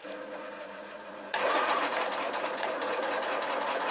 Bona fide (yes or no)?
no